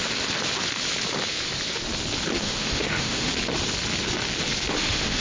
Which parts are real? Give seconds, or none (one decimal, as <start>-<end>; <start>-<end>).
0.0-2.4; 3.3-4.7